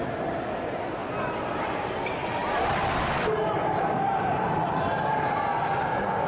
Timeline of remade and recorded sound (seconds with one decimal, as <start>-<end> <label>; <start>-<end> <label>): 0.0-2.4 recorded; 2.4-6.3 remade